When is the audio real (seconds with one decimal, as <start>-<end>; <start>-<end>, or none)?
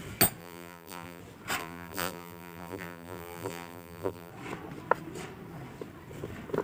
0.0-0.4; 1.2-1.6; 4.3-6.6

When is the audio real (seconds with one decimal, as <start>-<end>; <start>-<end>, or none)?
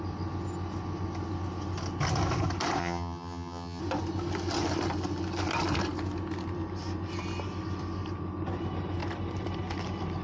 0.0-2.8; 3.8-10.2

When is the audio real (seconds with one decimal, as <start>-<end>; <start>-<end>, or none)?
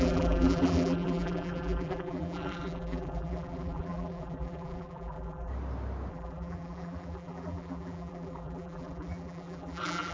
5.5-6.1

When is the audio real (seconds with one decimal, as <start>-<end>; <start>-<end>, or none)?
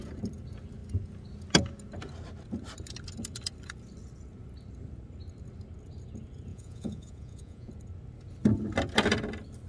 0.0-6.5; 7.7-9.7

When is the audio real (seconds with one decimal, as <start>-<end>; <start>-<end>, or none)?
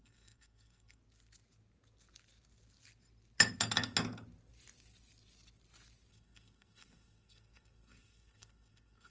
1.0-6.1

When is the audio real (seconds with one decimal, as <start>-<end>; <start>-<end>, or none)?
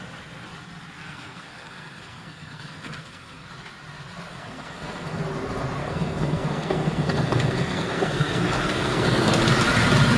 0.0-1.0; 3.5-4.3; 5.2-5.8; 9.4-10.2